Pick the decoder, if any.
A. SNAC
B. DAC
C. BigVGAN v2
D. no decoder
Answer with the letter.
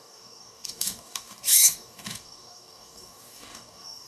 B